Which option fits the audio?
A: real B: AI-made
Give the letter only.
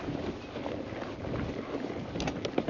A